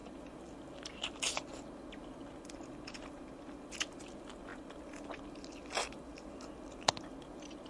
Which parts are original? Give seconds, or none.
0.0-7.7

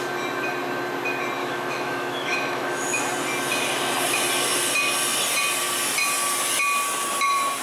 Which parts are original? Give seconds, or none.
0.0-1.4; 3.0-7.6

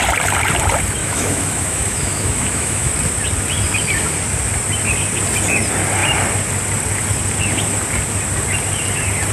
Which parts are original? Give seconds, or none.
0.0-1.0; 2.9-9.3

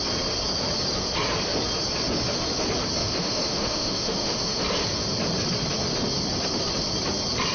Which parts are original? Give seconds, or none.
0.0-3.0; 4.6-7.5